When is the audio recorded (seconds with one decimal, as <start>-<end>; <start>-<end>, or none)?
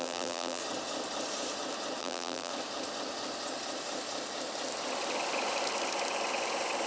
0.6-2.0; 2.5-6.9